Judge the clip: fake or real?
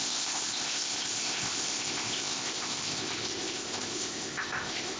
fake